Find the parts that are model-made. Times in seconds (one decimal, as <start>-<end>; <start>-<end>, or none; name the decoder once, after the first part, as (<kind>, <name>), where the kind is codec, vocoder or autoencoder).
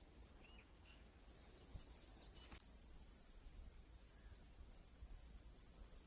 0.6-1.2 (codec, DAC)